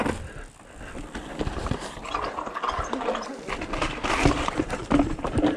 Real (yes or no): yes